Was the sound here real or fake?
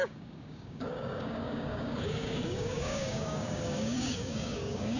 fake